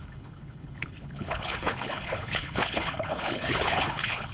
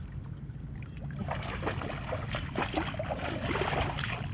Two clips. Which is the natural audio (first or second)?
second